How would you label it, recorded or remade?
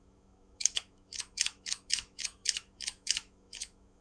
remade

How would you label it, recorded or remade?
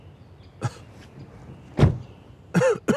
recorded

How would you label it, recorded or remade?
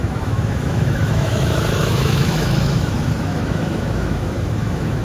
remade